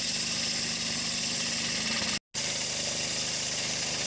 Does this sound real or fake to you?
real